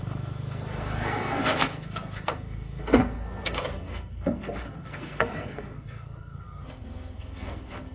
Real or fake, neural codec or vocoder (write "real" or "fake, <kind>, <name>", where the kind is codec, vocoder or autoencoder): fake, codec, SNAC